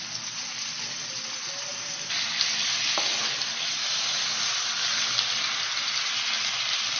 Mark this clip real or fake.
real